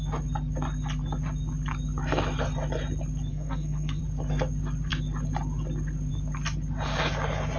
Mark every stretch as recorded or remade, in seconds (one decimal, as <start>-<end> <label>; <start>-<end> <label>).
0.0-3.3 recorded; 3.3-4.0 remade; 4.0-7.6 recorded